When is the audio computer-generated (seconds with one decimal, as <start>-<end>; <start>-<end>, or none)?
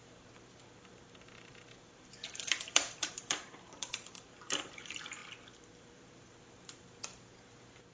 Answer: 0.0-5.2; 5.7-7.9